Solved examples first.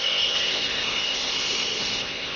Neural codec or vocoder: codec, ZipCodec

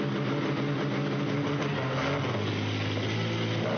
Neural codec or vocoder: none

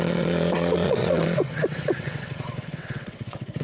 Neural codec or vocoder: vocoder, WaveNeXt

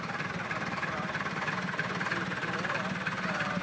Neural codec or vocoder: vocoder, BigVGAN v2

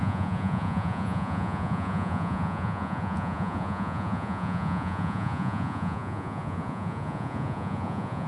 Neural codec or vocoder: vocoder, Vocos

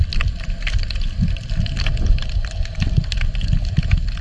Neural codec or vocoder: none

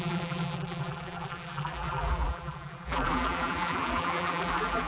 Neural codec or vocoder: vocoder, BigVGAN v2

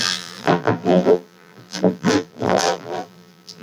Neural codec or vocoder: vocoder, BigVGAN v2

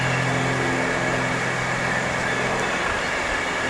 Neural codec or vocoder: none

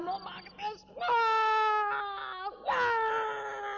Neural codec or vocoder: none